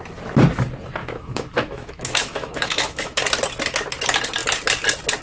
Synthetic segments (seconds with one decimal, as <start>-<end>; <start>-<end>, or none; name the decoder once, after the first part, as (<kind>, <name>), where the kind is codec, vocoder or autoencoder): 1.0-3.2 (autoencoder, DAC-VAE)